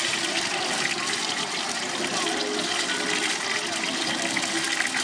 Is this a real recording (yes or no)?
yes